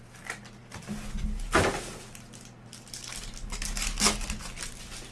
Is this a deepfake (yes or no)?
no